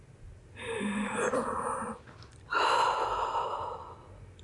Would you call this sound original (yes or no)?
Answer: yes